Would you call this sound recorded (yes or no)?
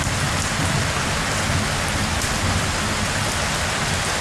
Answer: yes